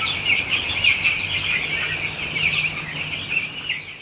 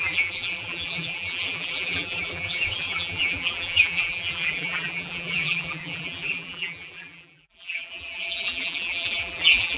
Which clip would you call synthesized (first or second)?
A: second